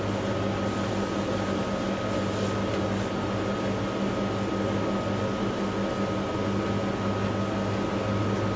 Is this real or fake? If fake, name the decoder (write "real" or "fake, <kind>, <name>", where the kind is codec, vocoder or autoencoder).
real